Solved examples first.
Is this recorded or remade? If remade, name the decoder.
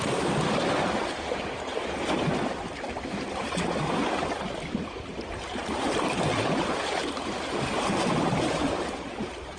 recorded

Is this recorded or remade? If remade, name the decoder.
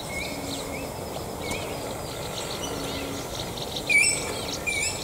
recorded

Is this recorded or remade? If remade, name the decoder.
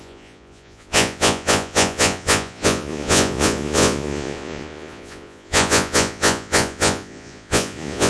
remade, vocoder, Vocos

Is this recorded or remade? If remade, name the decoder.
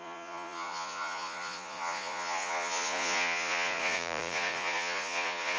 remade, vocoder, Vocos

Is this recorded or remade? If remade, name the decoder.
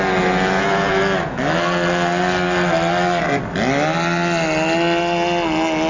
recorded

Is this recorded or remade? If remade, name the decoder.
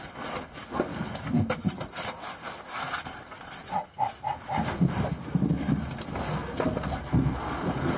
recorded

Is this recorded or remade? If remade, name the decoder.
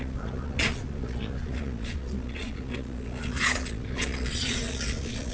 remade, vocoder, Vocos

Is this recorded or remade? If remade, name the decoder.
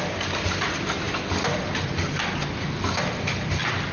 recorded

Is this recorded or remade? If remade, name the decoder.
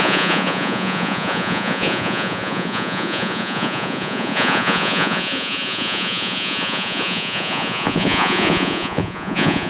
remade, vocoder, Vocos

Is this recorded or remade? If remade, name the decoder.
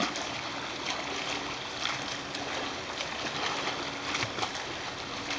recorded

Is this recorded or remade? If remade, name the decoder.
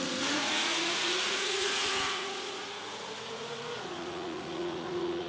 remade, vocoder, Vocos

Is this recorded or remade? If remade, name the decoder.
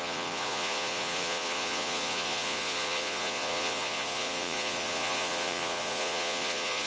remade, vocoder, Vocos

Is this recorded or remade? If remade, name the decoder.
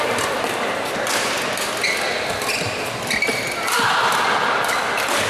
recorded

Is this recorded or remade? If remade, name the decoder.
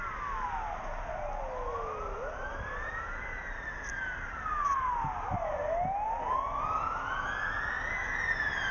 recorded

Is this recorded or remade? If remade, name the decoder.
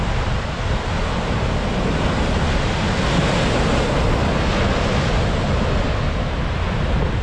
recorded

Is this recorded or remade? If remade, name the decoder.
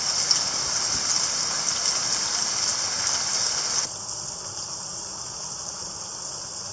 recorded